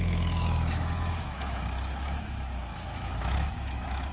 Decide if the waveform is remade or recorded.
remade